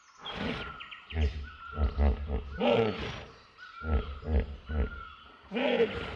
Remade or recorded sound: recorded